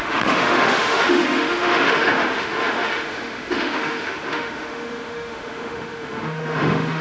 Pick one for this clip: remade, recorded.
remade